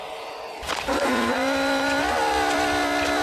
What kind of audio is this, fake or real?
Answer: real